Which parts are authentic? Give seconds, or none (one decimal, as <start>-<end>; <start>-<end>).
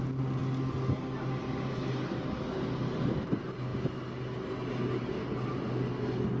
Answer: 0.0-6.4